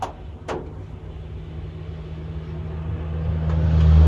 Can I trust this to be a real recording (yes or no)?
yes